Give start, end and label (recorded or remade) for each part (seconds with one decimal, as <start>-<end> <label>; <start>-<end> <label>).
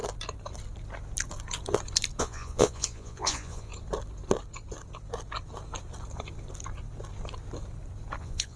0.0-2.2 recorded; 2.2-3.7 remade; 3.7-8.2 recorded; 8.2-8.6 remade